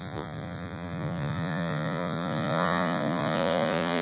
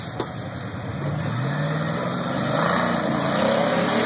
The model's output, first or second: first